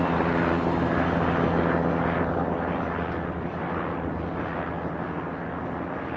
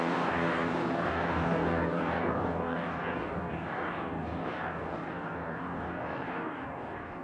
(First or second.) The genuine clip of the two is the first